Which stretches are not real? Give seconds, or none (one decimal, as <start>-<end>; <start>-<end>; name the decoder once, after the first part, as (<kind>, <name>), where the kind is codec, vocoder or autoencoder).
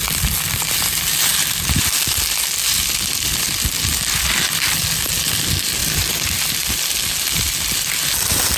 none